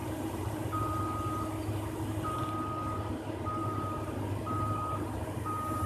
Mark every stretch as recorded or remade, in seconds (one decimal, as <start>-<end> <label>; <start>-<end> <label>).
0.0-1.0 remade; 1.0-3.6 recorded; 3.6-5.9 remade